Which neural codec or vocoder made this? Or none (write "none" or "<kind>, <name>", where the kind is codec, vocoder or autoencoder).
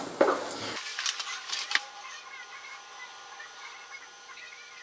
none